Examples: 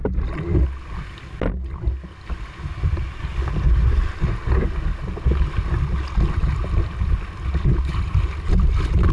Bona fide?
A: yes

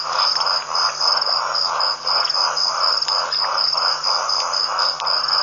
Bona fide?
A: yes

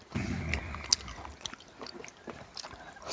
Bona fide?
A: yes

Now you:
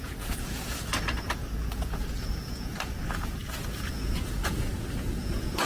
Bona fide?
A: no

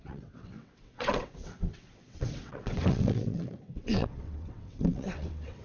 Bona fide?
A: no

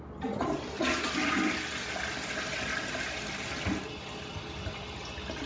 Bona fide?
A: yes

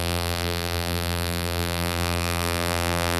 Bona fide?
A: no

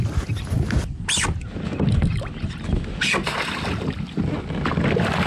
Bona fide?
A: yes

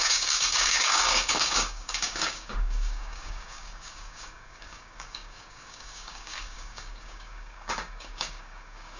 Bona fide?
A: no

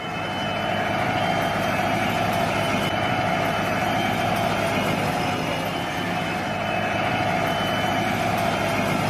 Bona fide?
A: yes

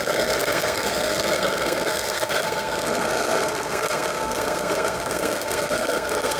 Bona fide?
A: no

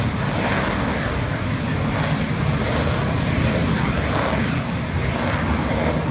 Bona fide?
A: yes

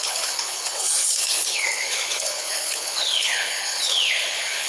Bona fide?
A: no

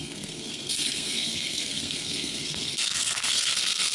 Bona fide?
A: no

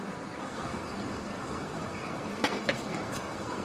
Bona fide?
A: no